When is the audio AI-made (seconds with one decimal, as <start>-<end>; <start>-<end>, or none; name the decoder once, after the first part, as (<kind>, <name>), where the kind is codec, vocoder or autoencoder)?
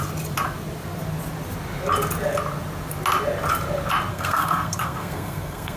4.1-5.8 (codec, SNAC)